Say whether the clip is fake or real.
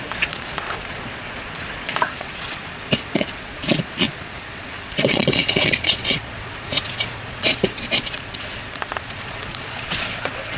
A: fake